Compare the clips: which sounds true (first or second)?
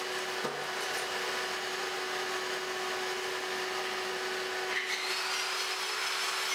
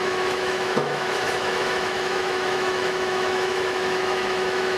first